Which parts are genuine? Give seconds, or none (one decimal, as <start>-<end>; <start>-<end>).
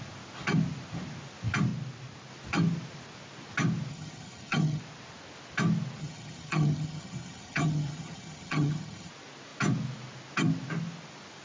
0.0-3.9; 4.8-6.0; 9.1-11.4